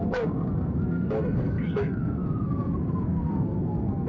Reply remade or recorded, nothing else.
remade